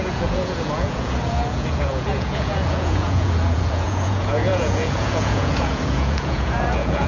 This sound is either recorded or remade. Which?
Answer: remade